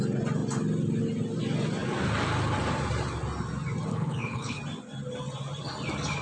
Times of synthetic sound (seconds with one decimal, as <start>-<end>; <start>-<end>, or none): 3.9-4.6